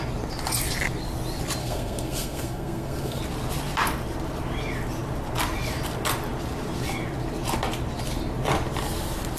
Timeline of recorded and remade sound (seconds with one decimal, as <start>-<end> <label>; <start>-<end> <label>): 0.0-1.6 recorded; 1.6-3.2 remade; 3.2-9.4 recorded